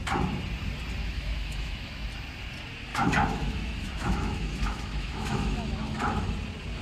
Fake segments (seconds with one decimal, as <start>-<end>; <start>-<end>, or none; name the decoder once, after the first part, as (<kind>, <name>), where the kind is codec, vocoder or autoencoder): 1.0-2.1 (autoencoder, DAC-VAE); 2.9-6.3